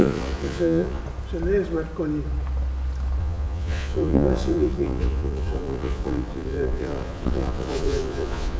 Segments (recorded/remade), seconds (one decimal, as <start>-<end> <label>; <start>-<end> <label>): 0.0-1.0 remade; 1.0-3.2 recorded; 3.2-8.6 remade

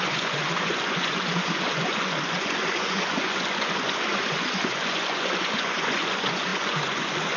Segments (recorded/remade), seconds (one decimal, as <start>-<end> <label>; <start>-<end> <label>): 0.0-7.4 remade

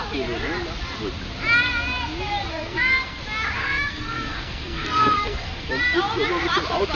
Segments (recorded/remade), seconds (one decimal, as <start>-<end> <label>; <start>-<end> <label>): 0.0-2.5 recorded; 2.5-3.2 remade; 3.2-3.6 recorded; 3.6-5.7 remade; 5.7-6.9 recorded

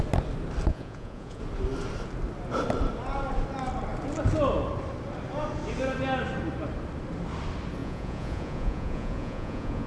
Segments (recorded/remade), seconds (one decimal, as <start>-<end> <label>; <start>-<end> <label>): 0.0-0.7 recorded; 0.7-1.4 remade; 1.4-7.8 recorded; 7.8-9.9 remade

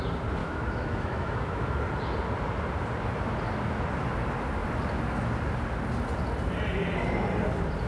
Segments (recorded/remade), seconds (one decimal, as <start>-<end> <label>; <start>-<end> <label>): 0.0-0.4 recorded; 0.4-1.8 remade; 1.8-7.9 recorded